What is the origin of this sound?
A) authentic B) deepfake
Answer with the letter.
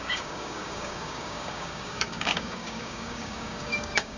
B